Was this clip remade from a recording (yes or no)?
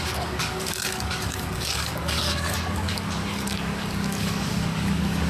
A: yes